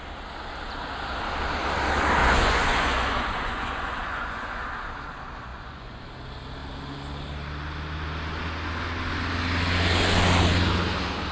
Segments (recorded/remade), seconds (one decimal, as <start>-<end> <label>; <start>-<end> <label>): 0.0-2.2 recorded; 2.2-4.6 remade; 4.6-5.5 recorded; 5.5-6.0 remade; 6.0-11.3 recorded